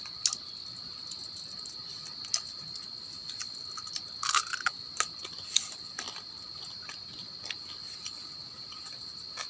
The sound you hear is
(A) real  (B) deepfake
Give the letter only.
A